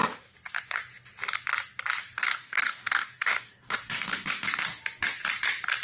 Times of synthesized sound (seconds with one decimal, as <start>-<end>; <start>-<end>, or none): 2.0-4.5